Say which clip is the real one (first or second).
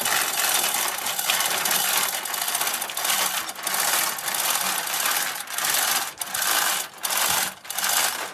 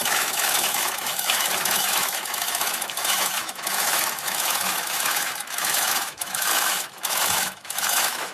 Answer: first